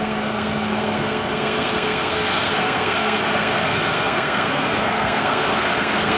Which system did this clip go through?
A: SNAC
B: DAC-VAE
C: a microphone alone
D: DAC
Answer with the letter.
A